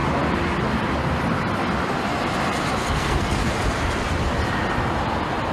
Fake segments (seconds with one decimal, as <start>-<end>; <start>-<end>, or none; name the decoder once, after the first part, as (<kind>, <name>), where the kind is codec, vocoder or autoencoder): 2.8-3.5 (codec, SNAC)